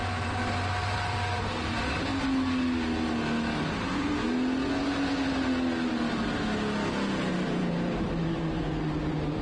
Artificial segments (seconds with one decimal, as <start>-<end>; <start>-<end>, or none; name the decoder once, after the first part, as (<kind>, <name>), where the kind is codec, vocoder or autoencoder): 0.0-2.1 (vocoder, BigVGAN v2); 7.3-9.4

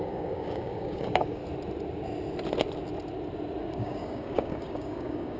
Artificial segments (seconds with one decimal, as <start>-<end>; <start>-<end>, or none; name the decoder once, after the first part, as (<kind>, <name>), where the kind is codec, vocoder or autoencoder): 0.0-1.4 (codec, DAC); 3.6-5.4

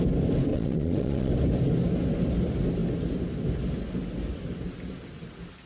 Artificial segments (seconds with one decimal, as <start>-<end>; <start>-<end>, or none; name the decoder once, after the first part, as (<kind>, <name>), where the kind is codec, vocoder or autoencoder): 0.5-1.3 (vocoder, Vocos)

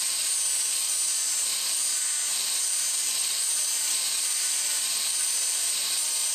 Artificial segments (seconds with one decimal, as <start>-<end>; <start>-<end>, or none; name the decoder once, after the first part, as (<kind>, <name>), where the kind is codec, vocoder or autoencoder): 2.3-5.6 (vocoder, BigVGAN v2)

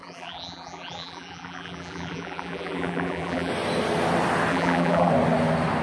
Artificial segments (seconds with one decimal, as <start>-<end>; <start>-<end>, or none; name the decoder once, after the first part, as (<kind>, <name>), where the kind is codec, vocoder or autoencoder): 0.0-3.5 (vocoder, BigVGAN v2); 4.5-5.1

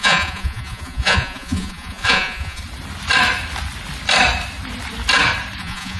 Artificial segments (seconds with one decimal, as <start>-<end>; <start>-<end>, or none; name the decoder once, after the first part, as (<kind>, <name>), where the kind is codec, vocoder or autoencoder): 0.0-2.6 (vocoder, Vocos); 5.6-6.0

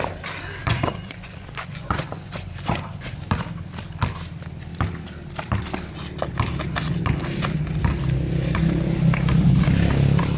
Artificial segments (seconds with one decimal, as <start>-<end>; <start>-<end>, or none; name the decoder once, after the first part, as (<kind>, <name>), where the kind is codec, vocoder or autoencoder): 0.6-3.2 (vocoder, Vocos)

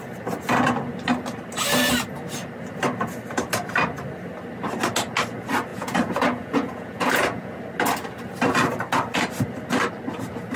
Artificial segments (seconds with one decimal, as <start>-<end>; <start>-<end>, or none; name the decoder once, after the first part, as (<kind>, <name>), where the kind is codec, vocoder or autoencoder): 5.7-7.6 (vocoder, Vocos)